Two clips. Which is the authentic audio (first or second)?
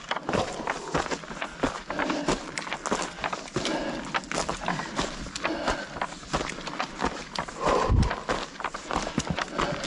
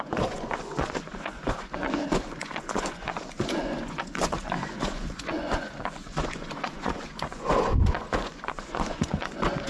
first